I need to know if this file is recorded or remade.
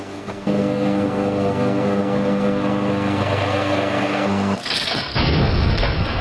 remade